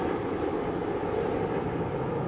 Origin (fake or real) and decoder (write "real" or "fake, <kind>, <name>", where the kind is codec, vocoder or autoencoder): real